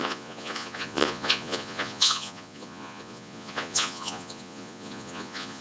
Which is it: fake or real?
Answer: fake